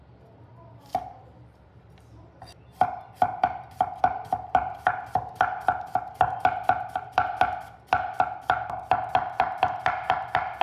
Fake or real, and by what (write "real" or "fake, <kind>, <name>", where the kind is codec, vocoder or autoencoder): fake, vocoder, BigVGAN v2